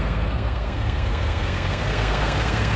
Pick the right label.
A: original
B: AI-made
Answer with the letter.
B